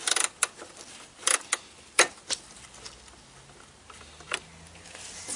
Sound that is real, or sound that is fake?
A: real